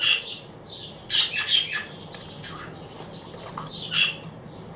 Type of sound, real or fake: real